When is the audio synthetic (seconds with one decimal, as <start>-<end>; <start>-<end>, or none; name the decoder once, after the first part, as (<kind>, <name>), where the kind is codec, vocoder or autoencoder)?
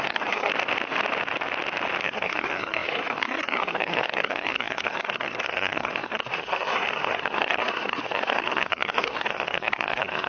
0.0-0.5 (codec, SNAC); 2.0-10.3